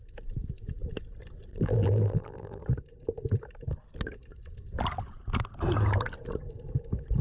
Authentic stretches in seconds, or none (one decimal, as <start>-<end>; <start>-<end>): 0.0-1.5; 2.6-7.2